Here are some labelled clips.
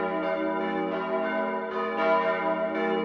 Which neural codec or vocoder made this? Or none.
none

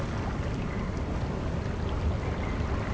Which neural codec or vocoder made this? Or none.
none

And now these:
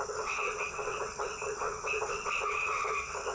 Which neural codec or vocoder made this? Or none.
vocoder, WaveNeXt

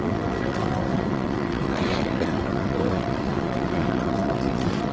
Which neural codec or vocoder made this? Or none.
vocoder, WaveNeXt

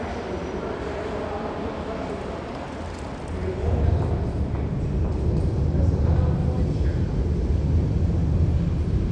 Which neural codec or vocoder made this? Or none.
none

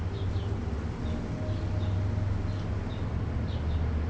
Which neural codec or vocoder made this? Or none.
none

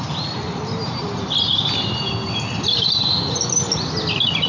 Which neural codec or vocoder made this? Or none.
none